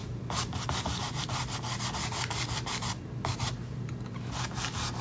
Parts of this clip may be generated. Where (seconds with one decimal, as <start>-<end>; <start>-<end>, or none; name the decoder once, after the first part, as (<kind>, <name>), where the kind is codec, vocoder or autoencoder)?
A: none